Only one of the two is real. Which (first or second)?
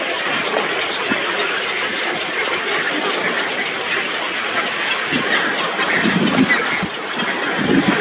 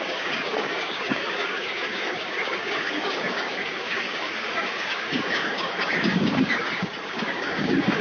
first